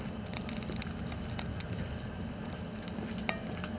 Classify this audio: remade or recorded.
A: recorded